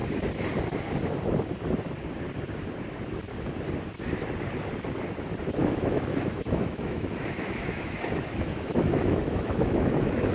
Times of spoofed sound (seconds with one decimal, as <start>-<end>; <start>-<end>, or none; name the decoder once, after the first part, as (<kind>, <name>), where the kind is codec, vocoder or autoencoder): 5.6-10.3 (autoencoder, DAC-VAE)